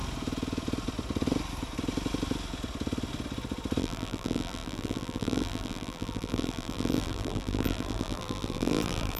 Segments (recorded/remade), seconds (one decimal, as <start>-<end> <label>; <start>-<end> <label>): 0.0-3.8 recorded; 3.8-9.2 remade